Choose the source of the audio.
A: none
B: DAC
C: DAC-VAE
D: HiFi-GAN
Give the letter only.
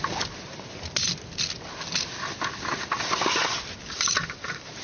A